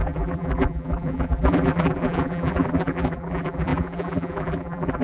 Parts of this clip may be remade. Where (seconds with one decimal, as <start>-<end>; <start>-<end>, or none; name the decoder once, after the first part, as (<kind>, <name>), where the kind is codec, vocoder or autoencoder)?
0.0-5.0 (vocoder, BigVGAN v2)